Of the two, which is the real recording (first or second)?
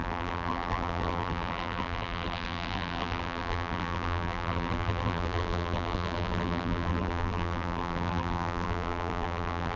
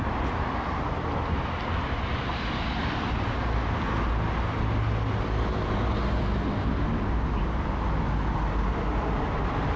second